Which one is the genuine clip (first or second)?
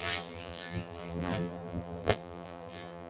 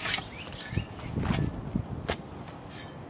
second